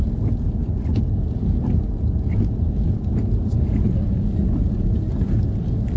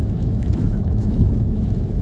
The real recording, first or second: first